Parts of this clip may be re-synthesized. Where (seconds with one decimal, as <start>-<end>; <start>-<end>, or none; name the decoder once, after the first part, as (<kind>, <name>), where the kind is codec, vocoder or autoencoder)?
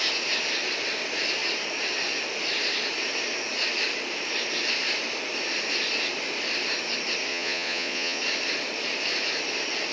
7.3-8.2 (vocoder, Vocos)